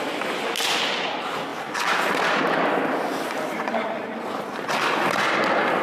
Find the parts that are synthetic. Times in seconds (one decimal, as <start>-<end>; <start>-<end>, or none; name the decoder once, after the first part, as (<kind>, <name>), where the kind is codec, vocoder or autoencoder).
1.5-2.8 (vocoder, BigVGAN v2)